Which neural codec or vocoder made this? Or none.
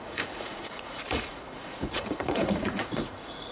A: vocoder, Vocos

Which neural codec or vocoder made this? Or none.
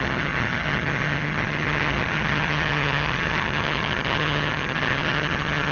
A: vocoder, HiFi-GAN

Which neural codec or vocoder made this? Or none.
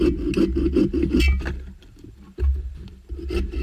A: none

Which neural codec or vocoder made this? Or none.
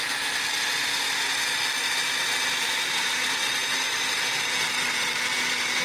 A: none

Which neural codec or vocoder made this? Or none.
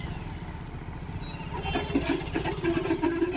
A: none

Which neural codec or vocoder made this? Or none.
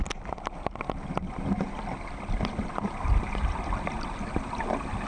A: none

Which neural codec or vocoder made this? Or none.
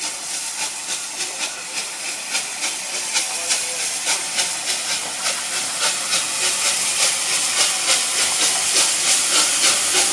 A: none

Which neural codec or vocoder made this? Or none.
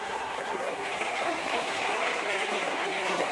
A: codec, SNAC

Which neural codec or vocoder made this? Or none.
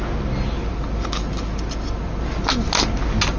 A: none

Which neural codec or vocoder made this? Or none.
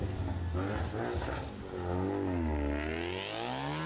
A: none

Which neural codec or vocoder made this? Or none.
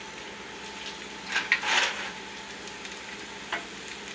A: none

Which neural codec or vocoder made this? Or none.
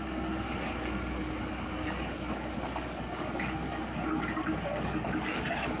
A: codec, DAC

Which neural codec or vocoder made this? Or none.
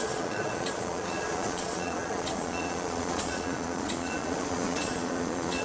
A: vocoder, Vocos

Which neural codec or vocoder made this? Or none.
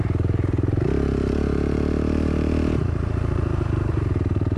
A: vocoder, BigVGAN v2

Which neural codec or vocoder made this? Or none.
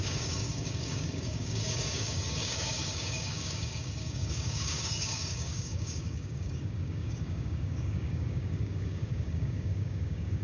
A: codec, DAC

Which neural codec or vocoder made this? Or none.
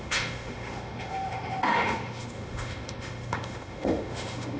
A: autoencoder, DAC-VAE